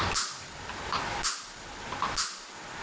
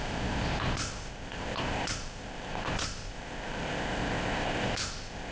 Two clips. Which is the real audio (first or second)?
first